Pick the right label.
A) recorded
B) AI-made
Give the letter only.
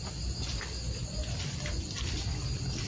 A